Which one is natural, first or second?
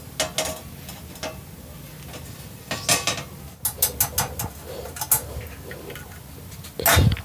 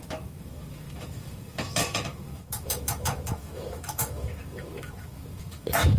first